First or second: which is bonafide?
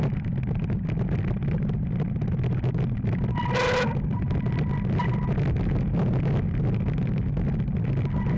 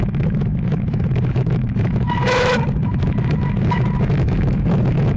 first